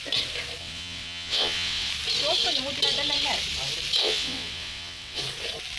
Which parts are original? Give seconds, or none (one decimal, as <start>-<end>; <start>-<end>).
0.0-0.6; 1.9-4.0; 5.2-5.8

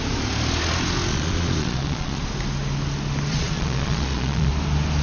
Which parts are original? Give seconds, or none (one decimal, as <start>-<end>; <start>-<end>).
0.0-1.1; 2.2-3.3; 4.5-5.0